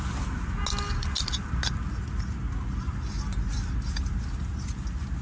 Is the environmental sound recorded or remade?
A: recorded